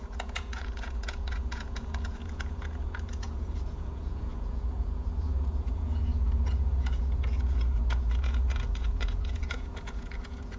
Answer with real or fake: fake